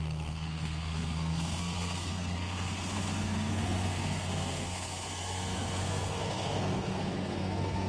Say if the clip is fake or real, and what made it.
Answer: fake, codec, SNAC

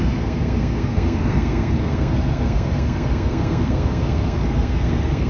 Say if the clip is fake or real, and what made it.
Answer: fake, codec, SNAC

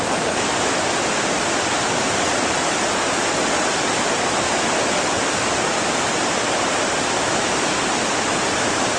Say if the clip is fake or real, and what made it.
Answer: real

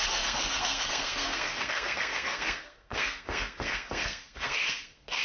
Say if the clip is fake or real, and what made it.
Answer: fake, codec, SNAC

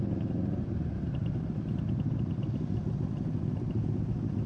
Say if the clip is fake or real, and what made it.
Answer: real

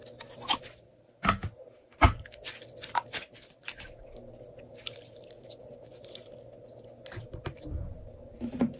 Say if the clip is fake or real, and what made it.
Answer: real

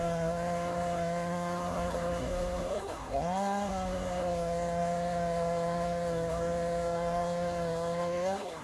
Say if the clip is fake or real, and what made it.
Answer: fake, codec, SNAC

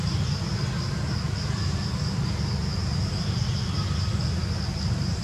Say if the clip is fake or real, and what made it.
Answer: real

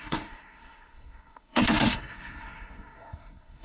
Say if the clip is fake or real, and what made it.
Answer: fake, codec, SNAC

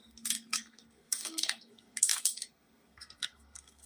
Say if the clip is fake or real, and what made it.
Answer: fake, codec, SNAC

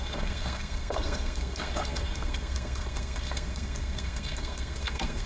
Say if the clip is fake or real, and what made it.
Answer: fake, codec, SNAC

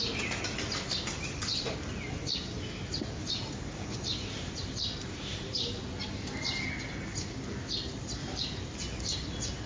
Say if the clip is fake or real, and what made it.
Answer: real